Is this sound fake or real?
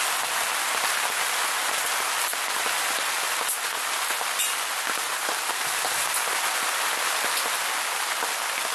real